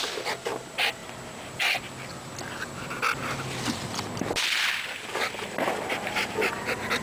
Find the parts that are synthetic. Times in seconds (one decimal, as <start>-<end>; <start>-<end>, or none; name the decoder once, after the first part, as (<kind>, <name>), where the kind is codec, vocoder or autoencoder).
none